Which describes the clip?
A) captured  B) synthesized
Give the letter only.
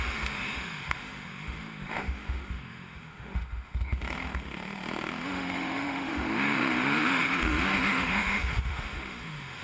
B